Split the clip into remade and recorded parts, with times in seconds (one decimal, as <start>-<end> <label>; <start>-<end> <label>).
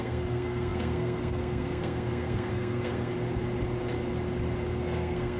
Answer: 0.0-3.1 remade; 3.1-4.8 recorded; 4.8-5.4 remade